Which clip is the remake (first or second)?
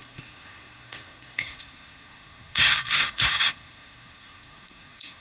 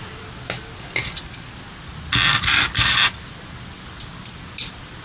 first